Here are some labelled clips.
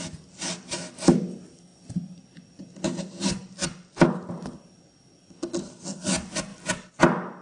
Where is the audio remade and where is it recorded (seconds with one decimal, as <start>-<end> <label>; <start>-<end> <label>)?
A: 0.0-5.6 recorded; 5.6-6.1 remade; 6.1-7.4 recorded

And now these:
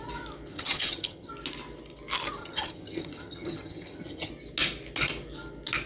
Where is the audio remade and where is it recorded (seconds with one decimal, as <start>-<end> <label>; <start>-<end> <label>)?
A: 0.0-0.5 recorded; 0.5-1.3 remade; 1.3-2.4 recorded; 2.4-4.3 remade; 4.3-5.9 recorded

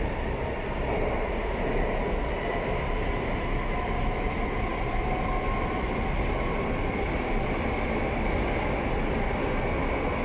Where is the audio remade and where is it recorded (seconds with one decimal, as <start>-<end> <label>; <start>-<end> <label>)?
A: 0.0-10.2 recorded

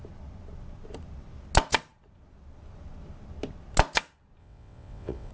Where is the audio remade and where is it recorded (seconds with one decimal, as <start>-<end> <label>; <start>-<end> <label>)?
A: 0.0-4.4 recorded; 4.4-5.3 remade

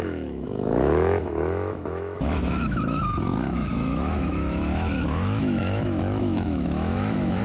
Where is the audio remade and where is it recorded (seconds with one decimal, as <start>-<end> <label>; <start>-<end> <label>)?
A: 0.0-7.4 remade

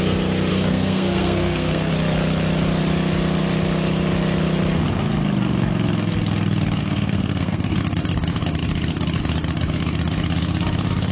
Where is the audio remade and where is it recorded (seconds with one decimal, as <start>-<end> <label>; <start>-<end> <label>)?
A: 0.0-0.5 recorded; 0.5-1.9 remade; 1.9-6.8 recorded; 6.8-7.8 remade; 7.8-11.1 recorded

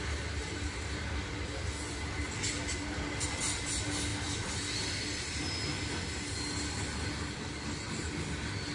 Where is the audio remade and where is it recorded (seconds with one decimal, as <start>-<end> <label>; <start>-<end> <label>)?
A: 0.0-8.7 recorded